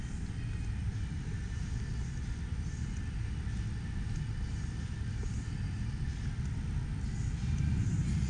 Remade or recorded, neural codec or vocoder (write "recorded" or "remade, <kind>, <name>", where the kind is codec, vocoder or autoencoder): recorded